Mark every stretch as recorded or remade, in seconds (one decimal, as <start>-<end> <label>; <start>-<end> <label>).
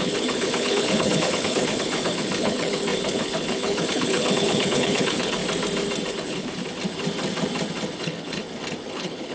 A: 0.0-5.4 remade; 5.4-6.1 recorded; 6.1-6.6 remade; 6.6-8.0 recorded; 8.0-8.4 remade; 8.4-8.9 recorded; 8.9-9.3 remade